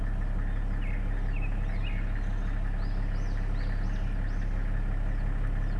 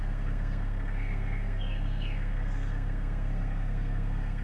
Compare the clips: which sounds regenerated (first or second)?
second